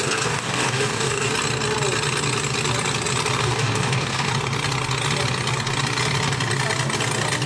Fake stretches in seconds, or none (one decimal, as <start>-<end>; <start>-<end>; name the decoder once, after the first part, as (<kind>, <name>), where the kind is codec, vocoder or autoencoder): 0.0-1.3 (codec, DAC); 3.4-4.3